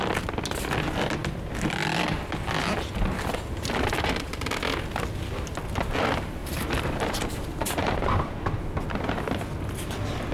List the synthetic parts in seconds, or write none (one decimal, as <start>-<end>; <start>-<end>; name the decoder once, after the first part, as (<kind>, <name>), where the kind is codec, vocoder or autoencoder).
6.4-8.6 (vocoder, BigVGAN v2)